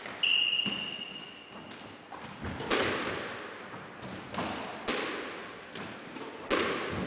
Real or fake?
real